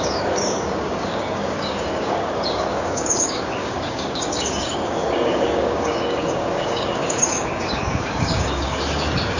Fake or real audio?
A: fake